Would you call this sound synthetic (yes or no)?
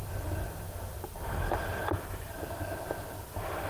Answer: no